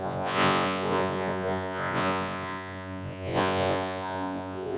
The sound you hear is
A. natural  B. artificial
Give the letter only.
B